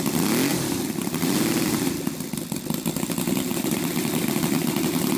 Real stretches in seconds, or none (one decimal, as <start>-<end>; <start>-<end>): 0.0-0.5; 1.4-3.5; 4.1-5.2